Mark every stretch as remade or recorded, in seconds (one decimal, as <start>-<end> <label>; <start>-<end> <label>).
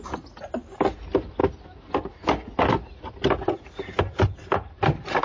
0.0-5.2 recorded